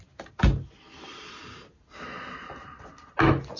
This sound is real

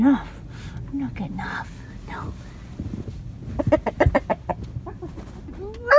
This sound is real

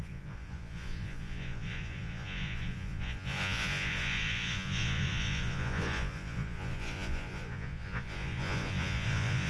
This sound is fake